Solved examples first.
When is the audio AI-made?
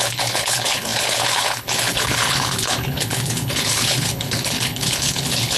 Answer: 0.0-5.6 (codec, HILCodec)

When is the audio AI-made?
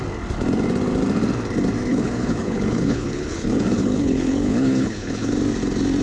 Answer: 1.9-5.3 (codec, HILCodec)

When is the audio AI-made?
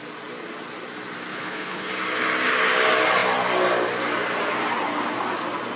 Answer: 1.3-1.9 (codec, HILCodec)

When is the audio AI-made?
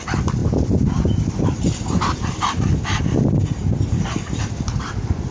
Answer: none